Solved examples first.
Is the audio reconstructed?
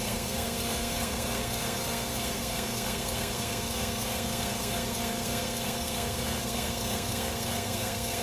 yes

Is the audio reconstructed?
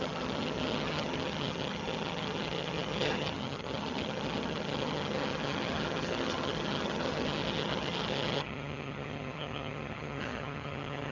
yes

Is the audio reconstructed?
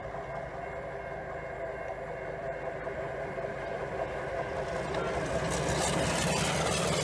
no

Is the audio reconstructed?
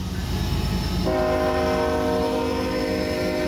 no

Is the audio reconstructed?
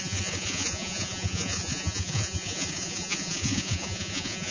yes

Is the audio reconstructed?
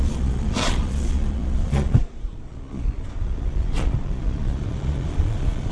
yes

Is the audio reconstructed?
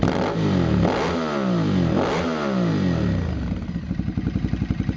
no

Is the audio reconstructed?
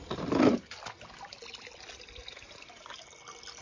no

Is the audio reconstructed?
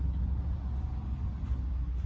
no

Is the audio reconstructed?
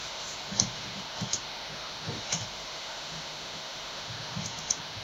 yes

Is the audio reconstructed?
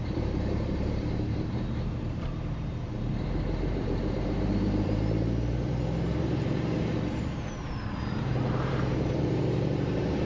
yes